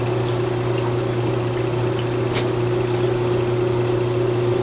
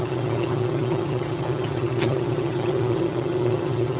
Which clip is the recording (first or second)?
first